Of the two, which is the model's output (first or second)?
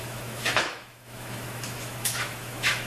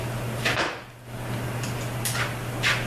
first